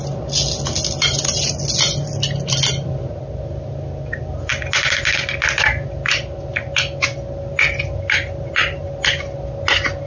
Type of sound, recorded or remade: recorded